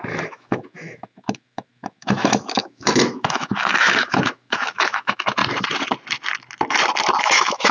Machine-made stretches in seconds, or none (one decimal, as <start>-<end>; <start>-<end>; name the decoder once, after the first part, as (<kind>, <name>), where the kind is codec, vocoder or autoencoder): 0.0-5.4 (autoencoder, DAC-VAE); 7.2-7.7